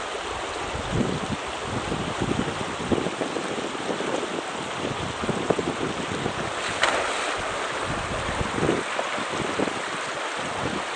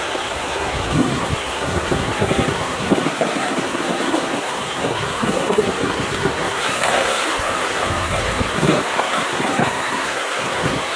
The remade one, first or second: second